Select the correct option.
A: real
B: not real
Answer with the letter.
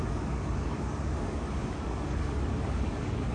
B